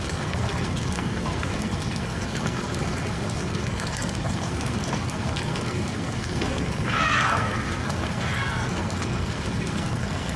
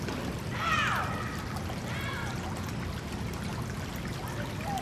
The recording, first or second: second